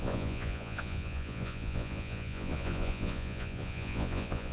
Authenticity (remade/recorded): remade